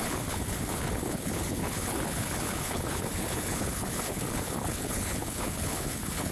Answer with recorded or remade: remade